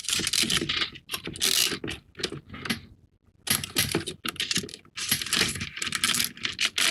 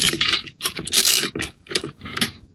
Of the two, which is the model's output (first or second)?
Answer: second